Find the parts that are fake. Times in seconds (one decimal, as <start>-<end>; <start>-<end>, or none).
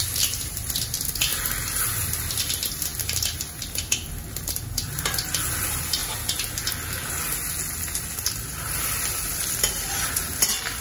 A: 0.0-1.3; 2.4-6.0; 8.0-10.8